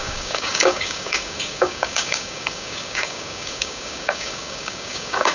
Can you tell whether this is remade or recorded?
remade